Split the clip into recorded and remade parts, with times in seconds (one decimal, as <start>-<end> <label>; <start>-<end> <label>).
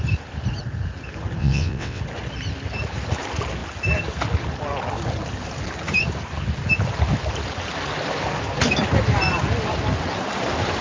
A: 0.0-1.4 recorded; 1.4-2.0 remade; 2.0-10.8 recorded